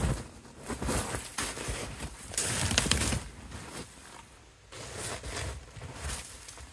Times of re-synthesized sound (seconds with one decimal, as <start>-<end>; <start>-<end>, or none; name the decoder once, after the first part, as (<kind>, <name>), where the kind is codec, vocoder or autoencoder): none